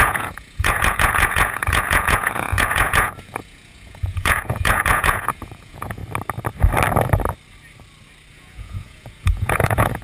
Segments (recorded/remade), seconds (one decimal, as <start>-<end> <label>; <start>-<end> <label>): 0.0-6.0 remade; 6.0-8.3 recorded; 8.3-10.0 remade